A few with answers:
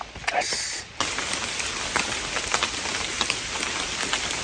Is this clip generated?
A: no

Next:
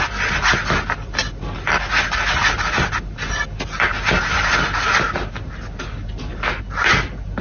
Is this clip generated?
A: no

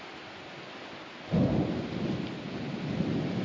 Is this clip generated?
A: no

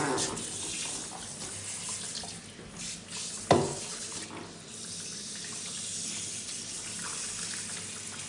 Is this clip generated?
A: no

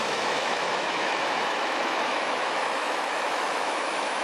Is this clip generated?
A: yes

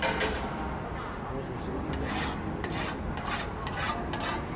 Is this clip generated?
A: no